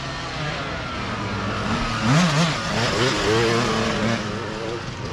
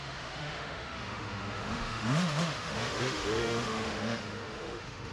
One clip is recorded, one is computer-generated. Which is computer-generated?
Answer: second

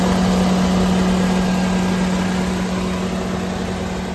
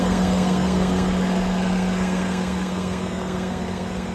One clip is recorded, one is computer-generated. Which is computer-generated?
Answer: second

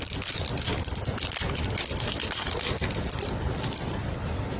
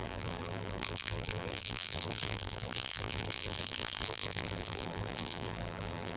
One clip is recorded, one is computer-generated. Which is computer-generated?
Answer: second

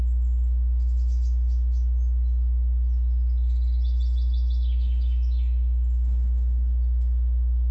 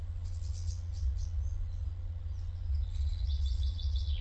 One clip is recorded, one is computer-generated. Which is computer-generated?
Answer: second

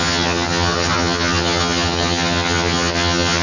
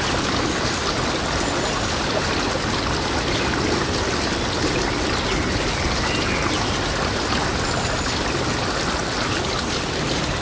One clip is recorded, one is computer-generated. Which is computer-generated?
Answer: first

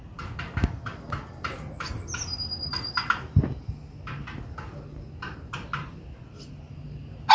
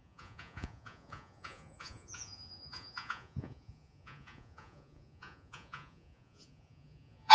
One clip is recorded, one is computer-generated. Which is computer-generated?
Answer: second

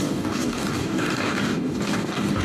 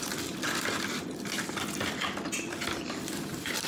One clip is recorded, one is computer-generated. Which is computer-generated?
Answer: first